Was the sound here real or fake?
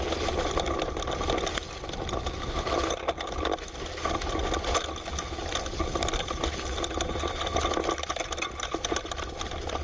real